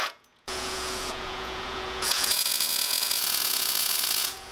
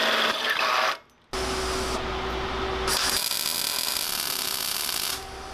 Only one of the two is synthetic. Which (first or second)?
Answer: first